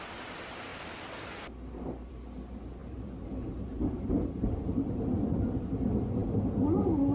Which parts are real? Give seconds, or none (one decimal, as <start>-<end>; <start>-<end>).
0.0-2.8; 5.8-7.1